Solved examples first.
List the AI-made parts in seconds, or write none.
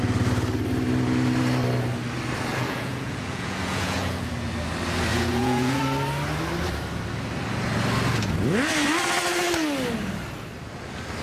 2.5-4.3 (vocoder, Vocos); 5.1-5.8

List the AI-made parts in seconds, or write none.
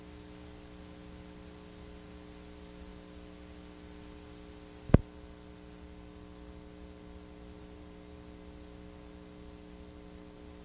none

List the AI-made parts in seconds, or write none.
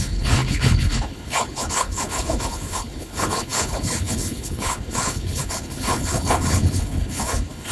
0.0-7.7 (codec, HILCodec)